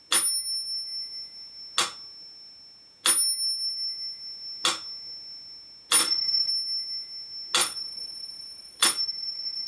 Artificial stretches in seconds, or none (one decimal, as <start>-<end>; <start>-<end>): 6.0-6.5; 7.6-9.7